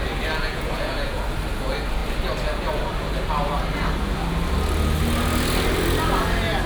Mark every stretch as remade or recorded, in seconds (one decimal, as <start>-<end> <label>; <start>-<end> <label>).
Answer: 0.0-0.4 recorded; 0.4-1.2 remade; 1.2-6.7 recorded